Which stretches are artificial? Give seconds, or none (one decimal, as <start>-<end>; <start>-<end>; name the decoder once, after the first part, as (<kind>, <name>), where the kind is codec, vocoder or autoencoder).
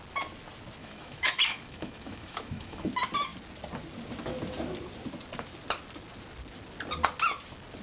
0.8-2.9 (autoencoder, DAC-VAE)